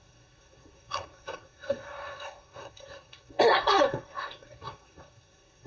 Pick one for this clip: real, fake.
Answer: fake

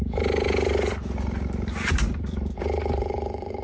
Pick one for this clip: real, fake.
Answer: fake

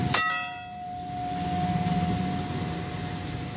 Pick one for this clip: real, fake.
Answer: real